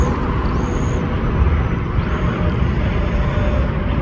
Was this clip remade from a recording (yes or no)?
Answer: no